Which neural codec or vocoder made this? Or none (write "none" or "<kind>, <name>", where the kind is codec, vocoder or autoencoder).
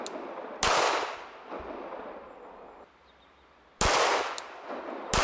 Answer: none